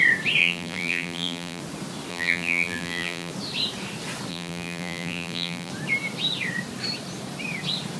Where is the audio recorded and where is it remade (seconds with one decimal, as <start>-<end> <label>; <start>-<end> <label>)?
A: 0.0-0.4 recorded; 0.4-1.6 remade; 1.6-2.1 recorded; 2.1-3.3 remade; 3.3-4.3 recorded; 4.3-5.7 remade; 5.7-8.0 recorded